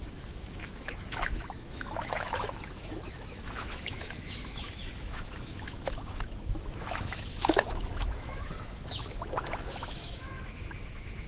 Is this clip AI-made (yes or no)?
yes